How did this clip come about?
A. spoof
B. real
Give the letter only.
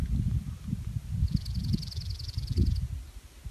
B